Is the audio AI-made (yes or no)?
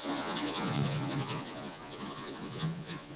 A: yes